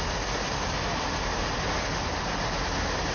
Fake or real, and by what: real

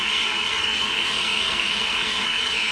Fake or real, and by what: fake, codec, SNAC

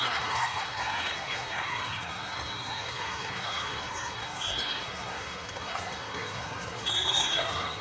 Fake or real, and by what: fake, codec, SNAC